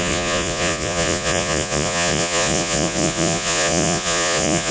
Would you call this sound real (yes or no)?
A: no